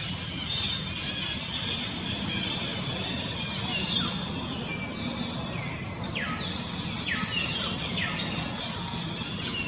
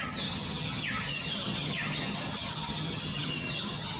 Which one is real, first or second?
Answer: first